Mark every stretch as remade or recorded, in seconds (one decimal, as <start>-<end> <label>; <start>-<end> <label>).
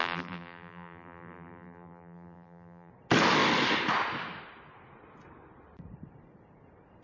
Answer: 0.0-2.9 remade; 2.9-7.0 recorded